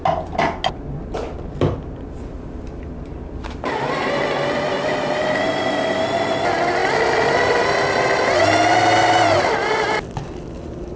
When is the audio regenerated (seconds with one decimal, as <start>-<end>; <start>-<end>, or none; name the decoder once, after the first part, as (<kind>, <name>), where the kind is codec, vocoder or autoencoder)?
none